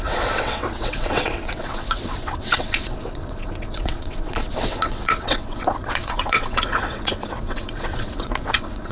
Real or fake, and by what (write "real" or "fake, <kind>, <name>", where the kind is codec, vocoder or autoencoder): fake, vocoder, WaveNeXt